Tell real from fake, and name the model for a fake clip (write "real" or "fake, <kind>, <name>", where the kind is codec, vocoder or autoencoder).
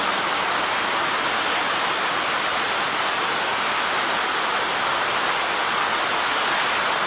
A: real